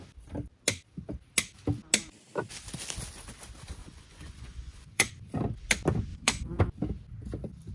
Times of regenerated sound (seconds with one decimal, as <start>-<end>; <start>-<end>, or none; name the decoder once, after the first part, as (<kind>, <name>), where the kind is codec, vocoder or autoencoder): 3.8-5.1 (vocoder, Vocos); 6.1-6.6